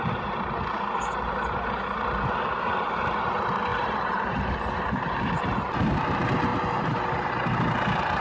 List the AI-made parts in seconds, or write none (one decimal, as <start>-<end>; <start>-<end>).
3.7-5.4; 6.5-7.1